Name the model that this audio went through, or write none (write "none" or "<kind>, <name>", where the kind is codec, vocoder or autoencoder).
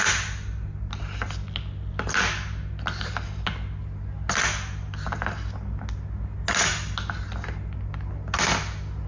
none